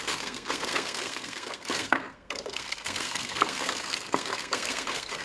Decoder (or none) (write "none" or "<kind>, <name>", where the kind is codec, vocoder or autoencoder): codec, SNAC